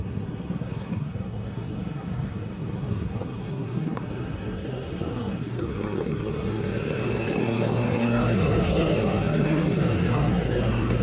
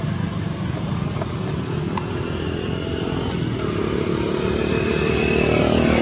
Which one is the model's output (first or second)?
first